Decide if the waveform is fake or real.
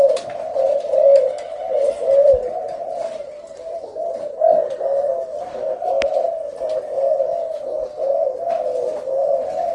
real